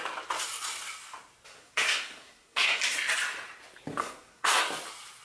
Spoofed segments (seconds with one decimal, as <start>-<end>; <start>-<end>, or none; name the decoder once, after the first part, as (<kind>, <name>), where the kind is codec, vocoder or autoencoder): 1.5-2.8 (codec, SNAC); 4.0-4.6